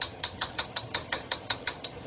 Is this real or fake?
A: fake